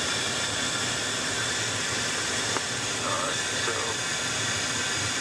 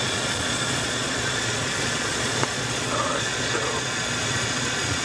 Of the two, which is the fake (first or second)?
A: second